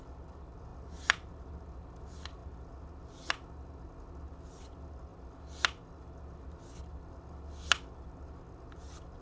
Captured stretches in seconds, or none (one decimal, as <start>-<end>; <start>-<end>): 0.0-9.2